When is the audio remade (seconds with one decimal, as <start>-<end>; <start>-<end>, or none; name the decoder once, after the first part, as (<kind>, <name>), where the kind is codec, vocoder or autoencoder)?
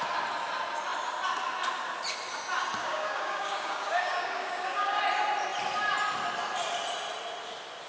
2.8-5.0 (codec, DAC)